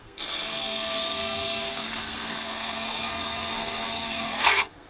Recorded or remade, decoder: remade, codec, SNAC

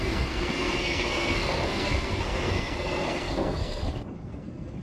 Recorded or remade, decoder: remade, codec, SNAC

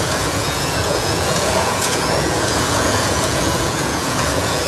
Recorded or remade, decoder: remade, vocoder, Vocos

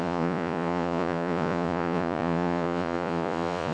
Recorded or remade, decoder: remade, vocoder, Vocos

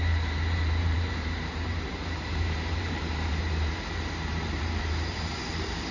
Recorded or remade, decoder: remade, vocoder, BigVGAN v2